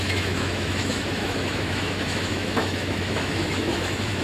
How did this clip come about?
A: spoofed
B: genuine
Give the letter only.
A